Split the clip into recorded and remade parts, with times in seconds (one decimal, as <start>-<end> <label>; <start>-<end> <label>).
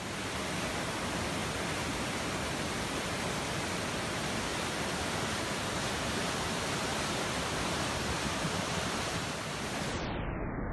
0.0-1.4 recorded; 1.4-2.8 remade; 2.8-4.5 recorded; 4.5-5.4 remade; 5.4-6.9 recorded; 6.9-9.3 remade; 9.3-10.7 recorded